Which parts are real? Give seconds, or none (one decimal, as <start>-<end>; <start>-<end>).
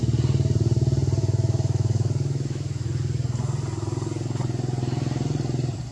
0.0-1.2; 2.9-5.9